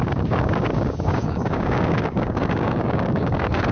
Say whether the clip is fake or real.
fake